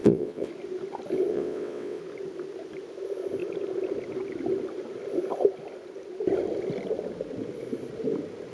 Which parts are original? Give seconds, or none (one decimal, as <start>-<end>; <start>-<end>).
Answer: 0.5-1.3; 2.0-8.5